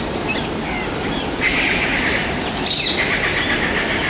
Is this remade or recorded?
recorded